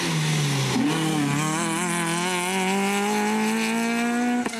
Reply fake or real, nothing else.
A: real